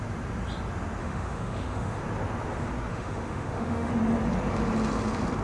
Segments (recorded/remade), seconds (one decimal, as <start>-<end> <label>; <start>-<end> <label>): 0.0-1.0 recorded; 1.0-2.0 remade; 2.0-2.9 recorded; 2.9-3.9 remade; 3.9-5.4 recorded